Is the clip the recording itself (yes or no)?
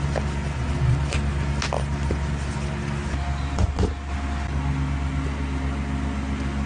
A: yes